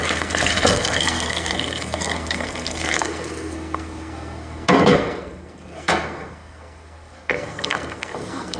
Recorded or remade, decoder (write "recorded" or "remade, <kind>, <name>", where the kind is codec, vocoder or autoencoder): remade, codec, SNAC